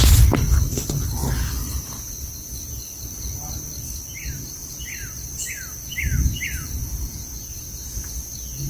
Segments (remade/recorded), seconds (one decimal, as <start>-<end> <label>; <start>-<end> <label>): 0.0-4.6 recorded; 4.6-5.5 remade; 5.5-6.8 recorded; 6.8-8.2 remade; 8.2-8.7 recorded